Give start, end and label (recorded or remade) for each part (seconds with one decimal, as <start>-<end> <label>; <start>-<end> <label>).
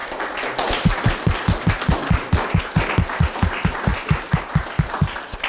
0.0-3.9 recorded; 3.9-4.5 remade; 4.5-5.5 recorded